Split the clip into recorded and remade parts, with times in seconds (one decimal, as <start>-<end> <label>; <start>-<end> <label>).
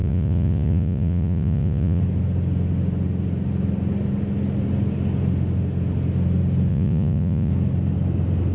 0.0-2.0 remade; 2.0-6.7 recorded; 6.7-7.5 remade; 7.5-8.5 recorded